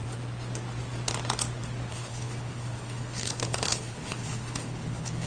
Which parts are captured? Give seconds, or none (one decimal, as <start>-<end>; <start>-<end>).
0.0-1.9